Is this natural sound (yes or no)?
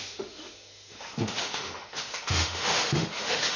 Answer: no